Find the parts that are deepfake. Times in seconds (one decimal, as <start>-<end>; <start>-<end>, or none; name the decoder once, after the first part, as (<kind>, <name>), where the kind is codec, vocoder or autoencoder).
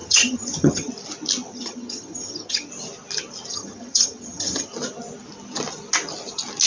0.0-0.9 (vocoder, HiFi-GAN); 1.5-2.7; 3.5-4.7